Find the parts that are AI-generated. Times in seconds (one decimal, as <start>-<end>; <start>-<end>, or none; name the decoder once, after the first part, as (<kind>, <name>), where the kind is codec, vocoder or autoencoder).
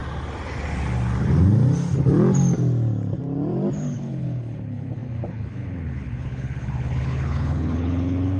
3.8-8.4 (codec, HILCodec)